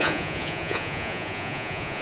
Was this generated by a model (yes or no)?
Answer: yes